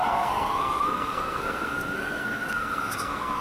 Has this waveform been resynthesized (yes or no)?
yes